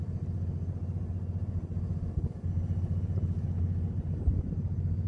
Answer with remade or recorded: recorded